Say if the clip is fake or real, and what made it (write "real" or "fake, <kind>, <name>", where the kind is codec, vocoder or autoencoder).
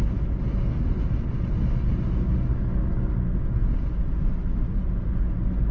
real